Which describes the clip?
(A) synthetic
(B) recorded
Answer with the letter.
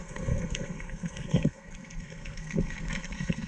A